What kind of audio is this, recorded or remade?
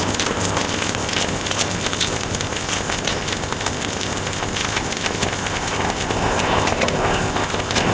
remade